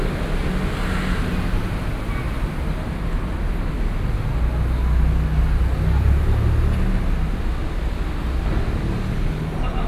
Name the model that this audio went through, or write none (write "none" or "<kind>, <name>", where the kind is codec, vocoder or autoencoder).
none